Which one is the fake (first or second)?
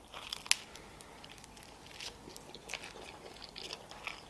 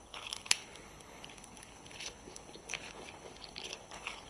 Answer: second